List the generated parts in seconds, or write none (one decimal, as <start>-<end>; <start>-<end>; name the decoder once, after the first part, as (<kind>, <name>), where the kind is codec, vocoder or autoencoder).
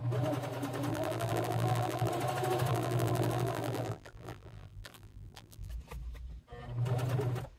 0.9-2.1 (vocoder, BigVGAN v2); 2.7-5.7